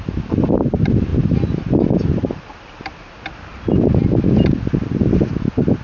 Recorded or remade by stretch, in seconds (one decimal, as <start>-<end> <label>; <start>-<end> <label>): 0.0-5.8 recorded

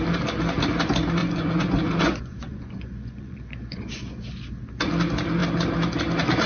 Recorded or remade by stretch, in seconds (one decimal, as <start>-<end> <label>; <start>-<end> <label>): 0.0-1.2 recorded; 1.2-4.2 remade; 4.2-6.5 recorded

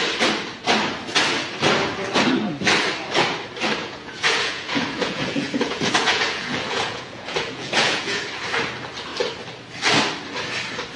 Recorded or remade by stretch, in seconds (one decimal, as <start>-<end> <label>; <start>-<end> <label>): 0.0-3.8 recorded; 3.8-8.3 remade; 8.3-11.0 recorded

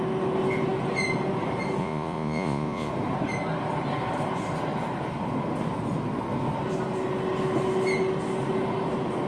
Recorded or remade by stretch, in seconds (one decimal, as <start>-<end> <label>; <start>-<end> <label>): 0.0-1.8 recorded; 1.8-2.9 remade; 2.9-9.3 recorded

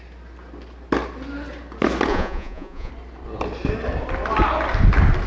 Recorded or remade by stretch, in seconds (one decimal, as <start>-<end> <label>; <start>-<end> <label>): 0.0-2.1 recorded; 2.1-2.9 remade; 2.9-5.3 recorded

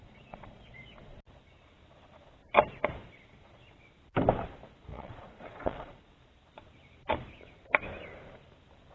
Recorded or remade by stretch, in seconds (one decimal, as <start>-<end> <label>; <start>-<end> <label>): 0.0-1.0 remade; 1.0-4.9 recorded; 4.9-6.1 remade; 6.1-8.9 recorded